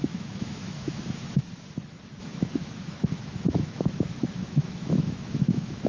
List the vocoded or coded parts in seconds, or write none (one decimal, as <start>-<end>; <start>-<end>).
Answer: 0.0-1.4; 2.2-5.9